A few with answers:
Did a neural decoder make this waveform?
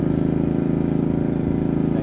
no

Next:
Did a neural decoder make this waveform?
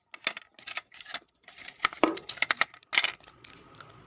no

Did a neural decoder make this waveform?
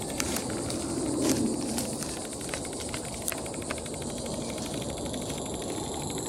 no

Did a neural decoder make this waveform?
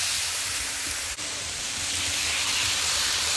yes